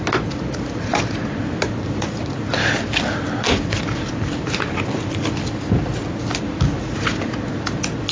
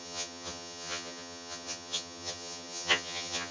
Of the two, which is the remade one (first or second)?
second